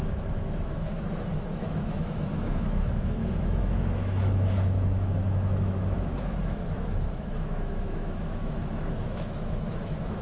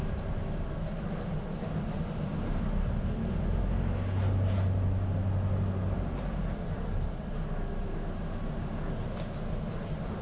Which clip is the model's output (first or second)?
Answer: first